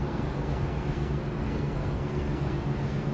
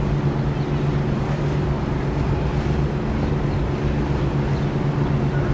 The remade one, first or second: first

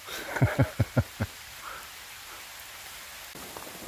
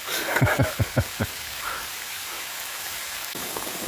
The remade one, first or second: second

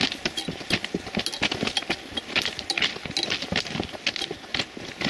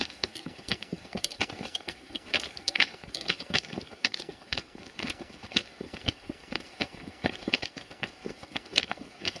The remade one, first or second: second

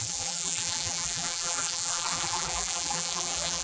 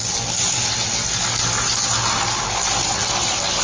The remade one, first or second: first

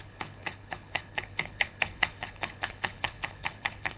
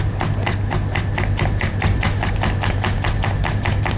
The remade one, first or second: first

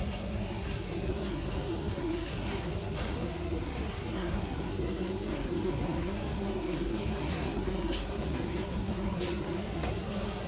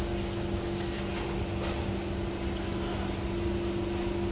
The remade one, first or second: first